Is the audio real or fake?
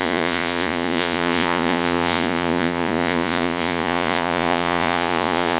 fake